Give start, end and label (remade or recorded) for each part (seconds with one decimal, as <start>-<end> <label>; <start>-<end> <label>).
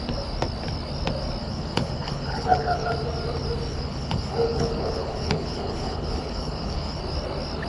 0.0-1.4 recorded; 1.4-2.9 remade; 2.9-3.7 recorded; 3.7-7.0 remade; 7.0-7.7 recorded